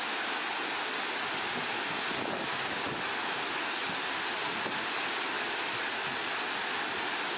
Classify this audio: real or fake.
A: real